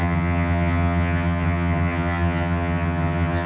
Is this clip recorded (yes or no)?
no